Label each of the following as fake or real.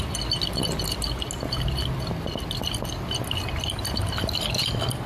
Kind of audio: real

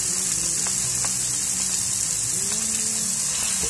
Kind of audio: real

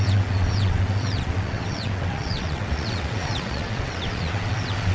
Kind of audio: fake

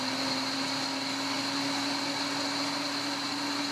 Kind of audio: real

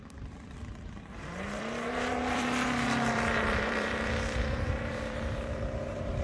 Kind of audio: fake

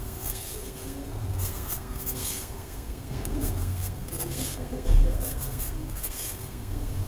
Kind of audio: fake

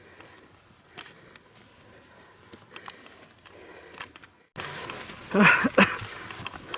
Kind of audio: real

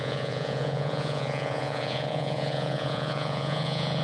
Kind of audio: fake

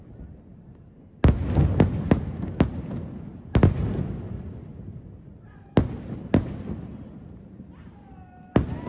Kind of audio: real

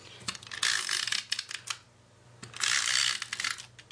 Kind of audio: real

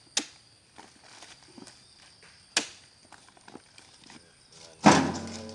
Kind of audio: real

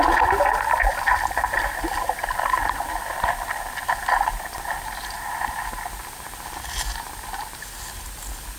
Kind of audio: real